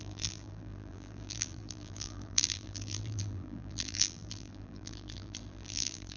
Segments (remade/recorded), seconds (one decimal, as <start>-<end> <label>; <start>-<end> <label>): 0.0-6.2 remade